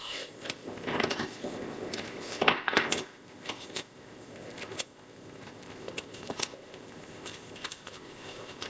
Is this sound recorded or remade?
remade